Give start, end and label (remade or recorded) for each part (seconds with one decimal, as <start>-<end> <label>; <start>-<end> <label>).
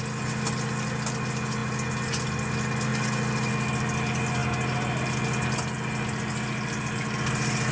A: 0.0-7.7 recorded